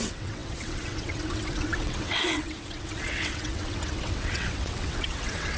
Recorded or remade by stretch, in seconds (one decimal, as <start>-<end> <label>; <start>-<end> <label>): 0.0-5.6 remade